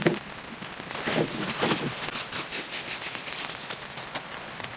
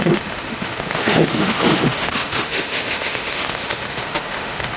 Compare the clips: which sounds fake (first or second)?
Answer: second